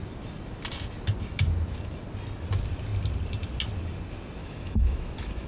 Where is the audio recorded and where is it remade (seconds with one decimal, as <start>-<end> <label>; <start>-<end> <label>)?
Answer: 0.0-4.4 recorded; 4.4-5.5 remade